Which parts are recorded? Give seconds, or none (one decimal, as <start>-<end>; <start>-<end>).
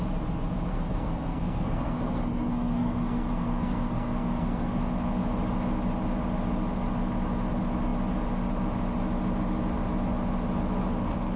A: 0.0-0.7; 4.9-11.4